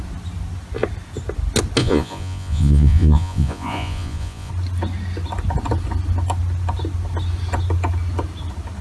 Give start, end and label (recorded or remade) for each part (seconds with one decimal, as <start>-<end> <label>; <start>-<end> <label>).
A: 0.0-1.8 recorded; 1.8-4.5 remade; 4.5-8.8 recorded